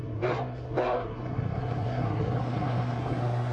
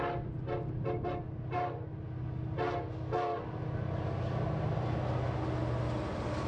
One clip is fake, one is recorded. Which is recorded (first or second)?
second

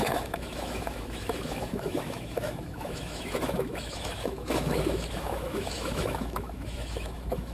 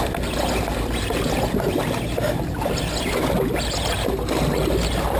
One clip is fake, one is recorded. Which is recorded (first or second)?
second